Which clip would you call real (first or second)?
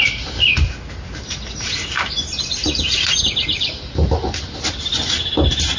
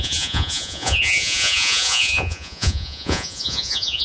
first